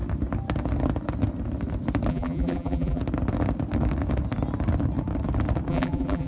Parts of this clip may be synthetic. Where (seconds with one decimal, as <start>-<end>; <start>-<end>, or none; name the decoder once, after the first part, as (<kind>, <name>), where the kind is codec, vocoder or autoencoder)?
2.1-3.0 (vocoder, BigVGAN v2); 5.7-6.3